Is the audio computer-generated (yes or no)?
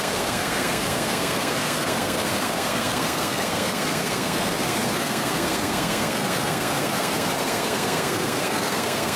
yes